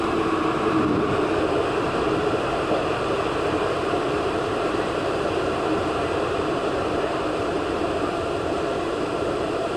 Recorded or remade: remade